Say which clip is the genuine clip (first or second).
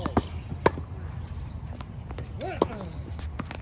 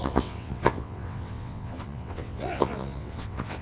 first